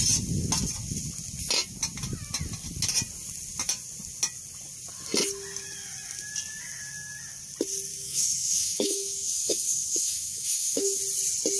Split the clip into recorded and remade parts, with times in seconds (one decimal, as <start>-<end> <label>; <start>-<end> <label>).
0.0-7.9 recorded; 7.9-11.0 remade; 11.0-11.6 recorded